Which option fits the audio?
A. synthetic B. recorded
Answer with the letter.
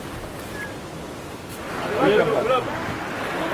B